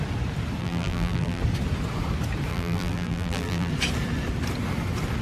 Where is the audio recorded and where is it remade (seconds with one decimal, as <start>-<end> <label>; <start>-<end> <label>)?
0.0-0.6 recorded; 0.6-1.4 remade; 1.4-2.5 recorded; 2.5-3.7 remade; 3.7-5.2 recorded